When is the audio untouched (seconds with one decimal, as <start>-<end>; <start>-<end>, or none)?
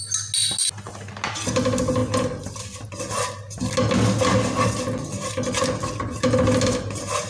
0.0-7.3